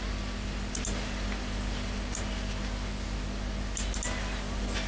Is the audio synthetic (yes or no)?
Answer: no